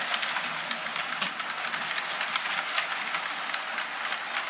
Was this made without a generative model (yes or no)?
yes